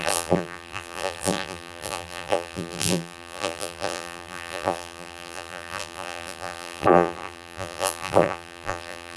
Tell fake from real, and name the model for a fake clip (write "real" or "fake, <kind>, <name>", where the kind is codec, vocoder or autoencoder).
fake, vocoder, BigVGAN v2